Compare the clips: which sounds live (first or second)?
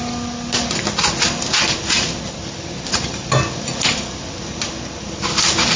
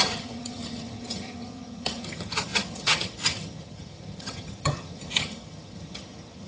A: first